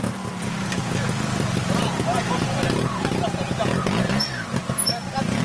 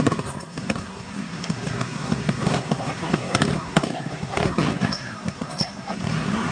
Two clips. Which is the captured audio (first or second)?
first